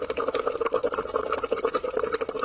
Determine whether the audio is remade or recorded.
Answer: recorded